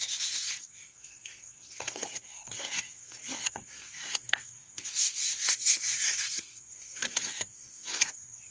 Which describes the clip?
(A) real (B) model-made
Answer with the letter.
B